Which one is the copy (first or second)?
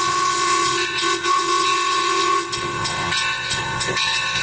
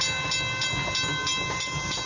first